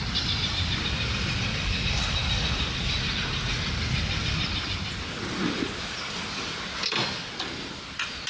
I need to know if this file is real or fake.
real